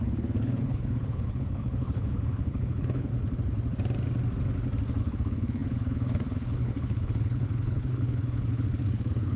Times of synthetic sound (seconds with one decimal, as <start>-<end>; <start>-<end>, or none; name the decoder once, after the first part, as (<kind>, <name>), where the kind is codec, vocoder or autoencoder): 0.0-3.1 (codec, HILCodec); 5.0-9.4